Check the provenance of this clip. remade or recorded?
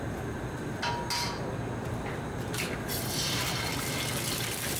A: recorded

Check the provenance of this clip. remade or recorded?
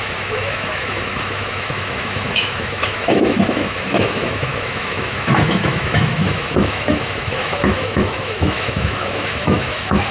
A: remade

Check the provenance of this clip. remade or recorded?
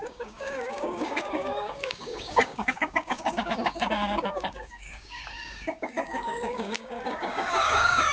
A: remade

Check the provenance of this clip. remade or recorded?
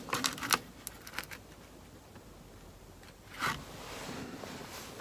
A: recorded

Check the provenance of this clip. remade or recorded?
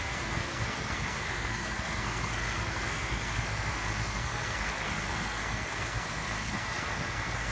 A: remade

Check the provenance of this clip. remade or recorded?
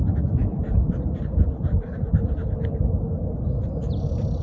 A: recorded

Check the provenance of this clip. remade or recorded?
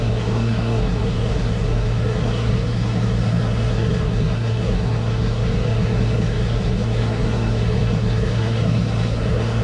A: remade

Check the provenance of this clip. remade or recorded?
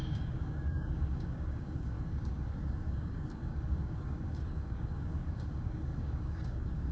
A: remade